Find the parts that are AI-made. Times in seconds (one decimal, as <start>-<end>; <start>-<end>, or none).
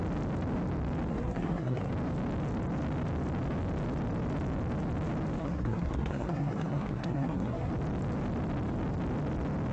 1.1-1.9; 5.4-7.7